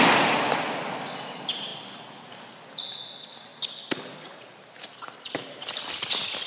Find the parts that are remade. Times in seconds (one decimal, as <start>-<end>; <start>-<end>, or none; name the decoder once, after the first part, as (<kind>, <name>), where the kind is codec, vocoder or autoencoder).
none